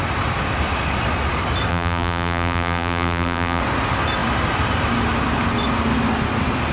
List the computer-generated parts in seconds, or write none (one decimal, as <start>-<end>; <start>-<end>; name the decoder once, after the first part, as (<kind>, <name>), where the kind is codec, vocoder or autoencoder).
1.7-3.6 (vocoder, BigVGAN v2)